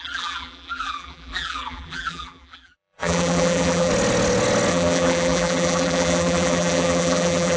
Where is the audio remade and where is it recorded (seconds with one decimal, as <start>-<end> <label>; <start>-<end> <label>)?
0.0-3.9 remade; 3.9-4.7 recorded; 4.7-7.6 remade